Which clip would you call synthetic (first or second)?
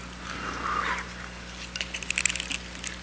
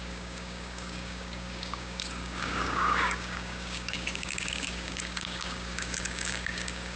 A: second